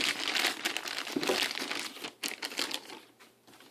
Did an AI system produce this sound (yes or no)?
no